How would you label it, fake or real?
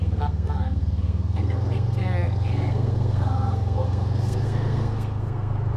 fake